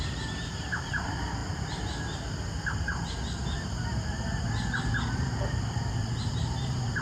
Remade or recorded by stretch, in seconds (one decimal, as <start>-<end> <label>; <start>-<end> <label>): 0.0-1.4 remade; 1.4-5.1 recorded; 5.1-7.0 remade